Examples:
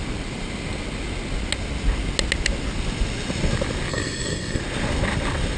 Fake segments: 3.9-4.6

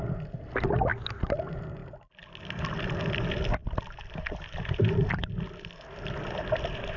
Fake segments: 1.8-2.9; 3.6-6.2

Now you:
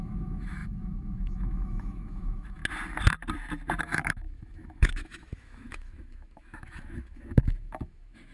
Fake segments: 0.0-2.6; 3.8-8.3